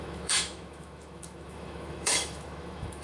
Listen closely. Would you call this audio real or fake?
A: fake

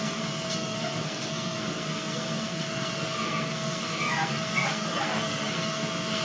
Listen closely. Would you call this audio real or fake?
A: fake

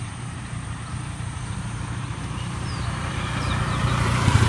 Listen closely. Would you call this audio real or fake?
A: fake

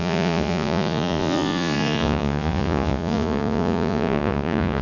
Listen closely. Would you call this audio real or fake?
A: fake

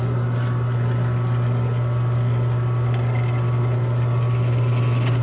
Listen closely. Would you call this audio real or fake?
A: real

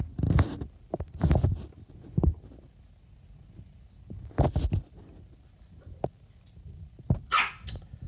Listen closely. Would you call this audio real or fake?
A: real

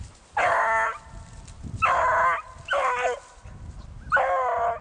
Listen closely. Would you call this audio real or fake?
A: real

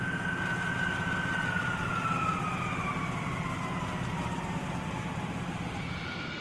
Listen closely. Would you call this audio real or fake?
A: real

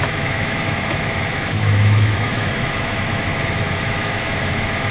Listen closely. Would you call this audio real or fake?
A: fake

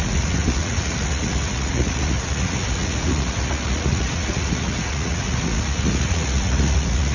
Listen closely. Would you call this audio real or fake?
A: fake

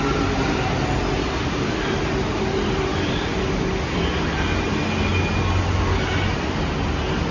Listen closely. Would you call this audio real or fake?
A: real